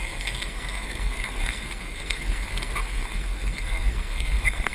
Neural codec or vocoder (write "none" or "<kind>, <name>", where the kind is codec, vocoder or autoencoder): codec, SNAC